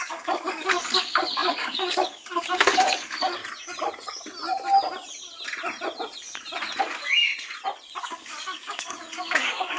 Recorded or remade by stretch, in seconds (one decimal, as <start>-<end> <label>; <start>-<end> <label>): 0.0-3.4 remade; 3.4-6.8 recorded; 6.8-7.3 remade; 7.3-8.0 recorded; 8.0-9.8 remade